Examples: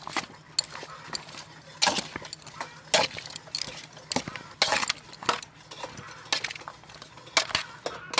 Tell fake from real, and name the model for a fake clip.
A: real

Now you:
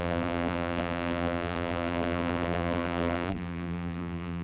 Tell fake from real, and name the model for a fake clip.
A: fake, vocoder, BigVGAN v2